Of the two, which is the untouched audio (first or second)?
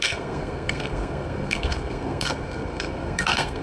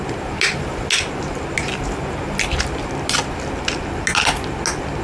second